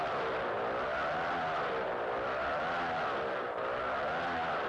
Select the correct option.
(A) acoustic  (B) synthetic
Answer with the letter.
A